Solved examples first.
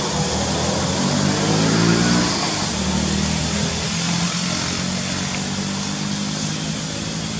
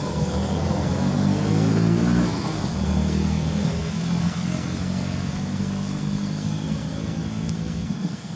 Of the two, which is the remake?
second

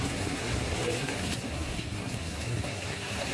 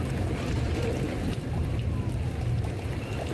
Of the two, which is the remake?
first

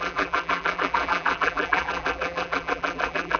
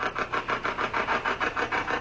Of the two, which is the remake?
first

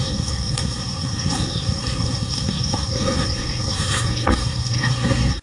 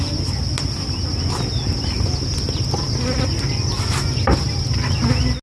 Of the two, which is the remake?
first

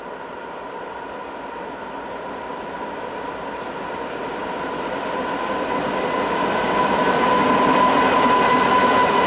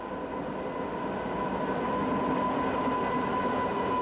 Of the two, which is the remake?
first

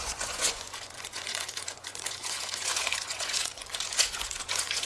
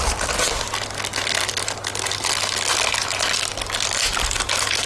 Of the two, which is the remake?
first